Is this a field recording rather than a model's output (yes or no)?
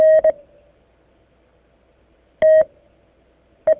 yes